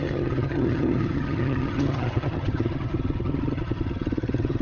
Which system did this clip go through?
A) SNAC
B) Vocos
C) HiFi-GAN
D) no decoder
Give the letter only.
C